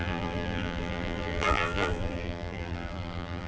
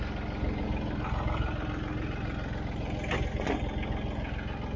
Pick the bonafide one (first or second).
second